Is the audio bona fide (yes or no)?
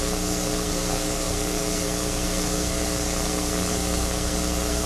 no